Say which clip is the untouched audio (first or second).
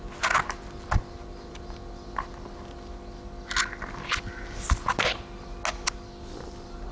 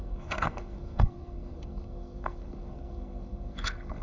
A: first